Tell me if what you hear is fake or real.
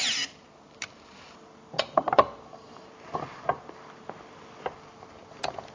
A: real